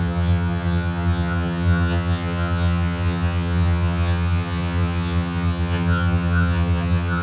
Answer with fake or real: fake